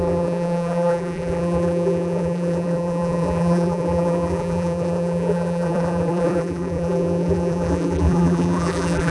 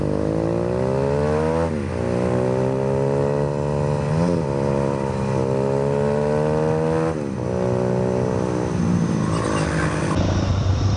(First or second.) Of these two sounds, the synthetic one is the first